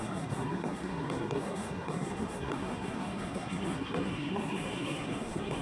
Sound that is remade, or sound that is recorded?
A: remade